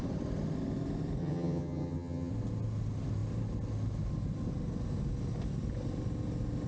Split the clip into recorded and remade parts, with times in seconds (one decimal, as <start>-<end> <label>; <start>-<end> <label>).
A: 0.0-1.2 recorded; 1.2-2.3 remade; 2.3-6.7 recorded